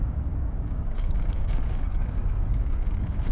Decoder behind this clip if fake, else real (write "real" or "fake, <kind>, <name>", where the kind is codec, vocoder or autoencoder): fake, codec, DAC